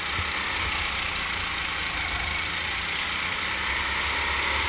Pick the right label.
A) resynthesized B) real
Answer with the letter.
B